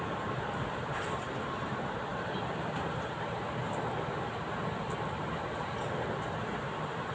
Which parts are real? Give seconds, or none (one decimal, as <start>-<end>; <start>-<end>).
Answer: 0.0-2.1; 3.8-7.1